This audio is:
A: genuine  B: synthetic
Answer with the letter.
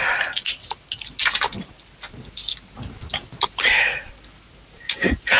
A